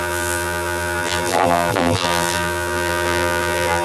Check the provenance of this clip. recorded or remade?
remade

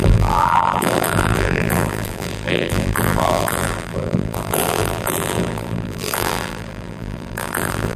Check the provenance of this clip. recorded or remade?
remade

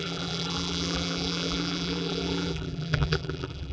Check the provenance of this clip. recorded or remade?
remade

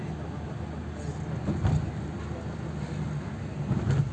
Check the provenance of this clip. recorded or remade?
recorded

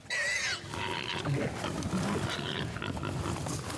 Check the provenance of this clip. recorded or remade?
recorded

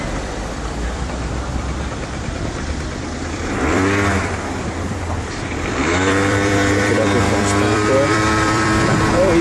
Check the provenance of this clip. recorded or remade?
remade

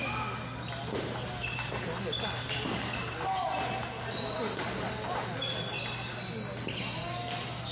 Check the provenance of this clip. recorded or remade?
recorded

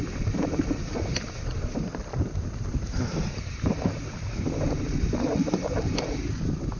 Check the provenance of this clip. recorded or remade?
remade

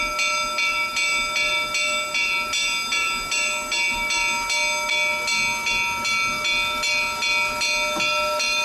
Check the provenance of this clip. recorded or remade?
recorded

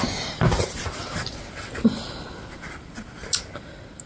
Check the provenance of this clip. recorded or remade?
recorded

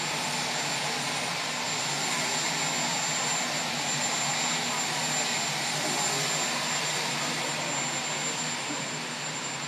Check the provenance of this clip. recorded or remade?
recorded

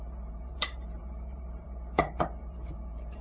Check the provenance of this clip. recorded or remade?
remade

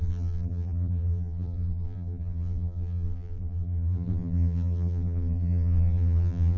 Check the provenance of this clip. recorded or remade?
remade